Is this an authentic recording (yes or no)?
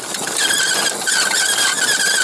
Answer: yes